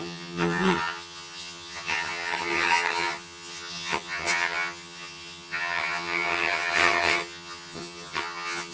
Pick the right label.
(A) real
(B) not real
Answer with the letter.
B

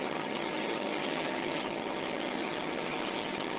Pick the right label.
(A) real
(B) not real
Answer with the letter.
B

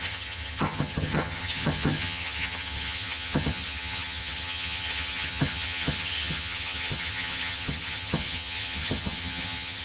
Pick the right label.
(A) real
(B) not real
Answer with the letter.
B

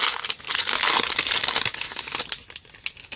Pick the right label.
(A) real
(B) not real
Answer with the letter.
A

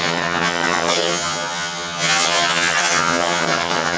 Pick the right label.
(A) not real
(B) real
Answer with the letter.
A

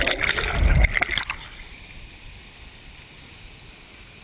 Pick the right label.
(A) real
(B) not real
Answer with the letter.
A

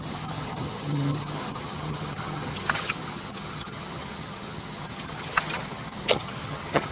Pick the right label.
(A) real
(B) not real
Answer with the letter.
B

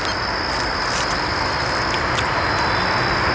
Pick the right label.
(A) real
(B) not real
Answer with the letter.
A